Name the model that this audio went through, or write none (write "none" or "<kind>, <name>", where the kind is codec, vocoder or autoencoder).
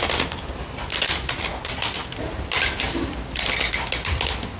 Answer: none